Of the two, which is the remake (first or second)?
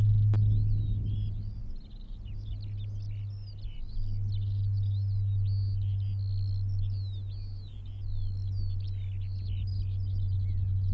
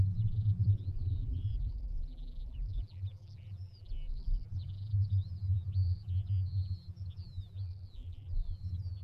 second